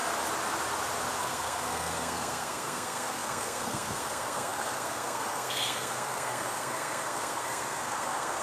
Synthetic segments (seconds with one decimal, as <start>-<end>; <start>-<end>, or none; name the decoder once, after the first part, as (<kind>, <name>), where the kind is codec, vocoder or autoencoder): 1.2-8.4 (codec, SNAC)